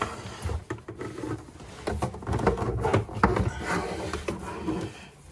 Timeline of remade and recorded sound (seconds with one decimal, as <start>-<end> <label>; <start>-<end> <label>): 0.0-5.3 recorded